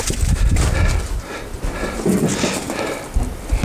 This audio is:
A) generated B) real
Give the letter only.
B